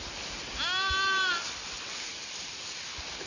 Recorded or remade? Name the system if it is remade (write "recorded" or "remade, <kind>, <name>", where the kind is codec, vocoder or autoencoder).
recorded